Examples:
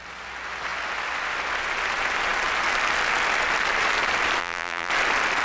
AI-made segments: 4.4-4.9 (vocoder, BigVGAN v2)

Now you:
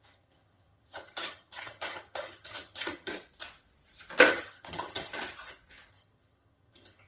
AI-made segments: 0.0-3.1 (vocoder, HiFi-GAN); 4.3-5.1; 5.9-7.1

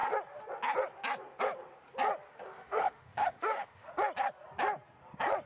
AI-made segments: 2.3-3.9 (autoencoder, DAC-VAE)

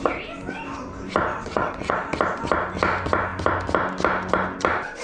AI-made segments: 1.3-1.9 (vocoder, WaveNeXt)

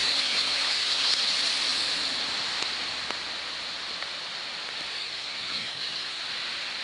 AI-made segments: 0.0-1.2 (codec, SNAC); 4.9-6.2